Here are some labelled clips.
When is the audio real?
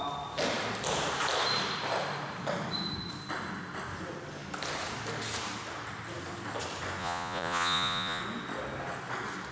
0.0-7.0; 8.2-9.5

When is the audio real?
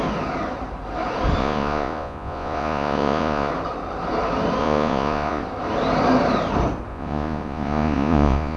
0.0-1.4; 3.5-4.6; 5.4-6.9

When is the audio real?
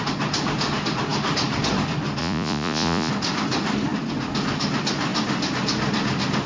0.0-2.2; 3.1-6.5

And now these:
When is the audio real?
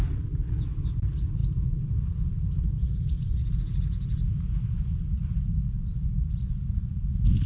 0.0-7.5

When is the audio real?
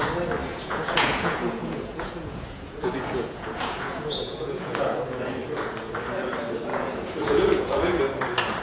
0.0-0.4; 5.0-6.7; 8.0-8.6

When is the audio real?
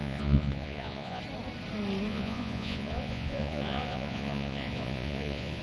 1.2-2.1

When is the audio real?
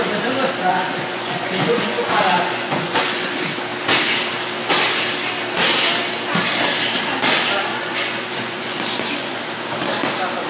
0.0-0.7; 3.3-7.7; 9.4-10.5